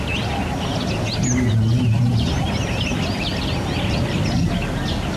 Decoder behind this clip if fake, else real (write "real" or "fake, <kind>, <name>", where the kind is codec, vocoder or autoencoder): real